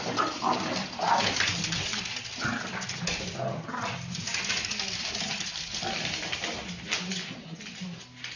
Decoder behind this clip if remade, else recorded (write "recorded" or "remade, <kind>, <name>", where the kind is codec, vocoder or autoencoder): recorded